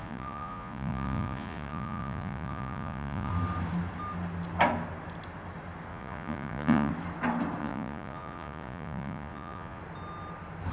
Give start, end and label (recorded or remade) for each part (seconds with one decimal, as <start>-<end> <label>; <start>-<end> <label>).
0.0-3.3 remade; 3.3-5.9 recorded; 5.9-6.9 remade; 6.9-7.6 recorded; 7.6-9.8 remade; 9.8-10.7 recorded